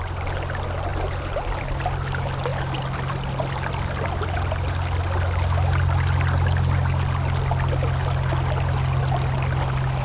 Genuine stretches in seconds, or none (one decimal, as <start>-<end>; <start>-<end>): 0.0-10.0